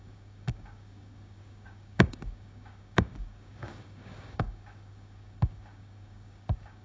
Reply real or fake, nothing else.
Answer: fake